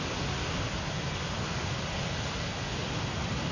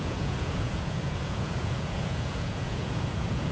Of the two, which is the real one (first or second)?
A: first